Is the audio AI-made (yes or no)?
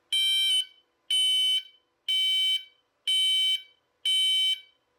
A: no